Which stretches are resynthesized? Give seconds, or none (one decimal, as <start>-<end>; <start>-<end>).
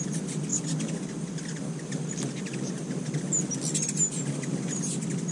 none